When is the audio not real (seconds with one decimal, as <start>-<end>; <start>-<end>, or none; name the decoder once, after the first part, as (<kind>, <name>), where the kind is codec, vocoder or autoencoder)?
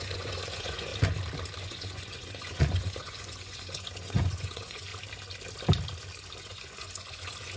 0.0-0.9 (vocoder, Vocos); 1.6-4.9; 6.4-7.6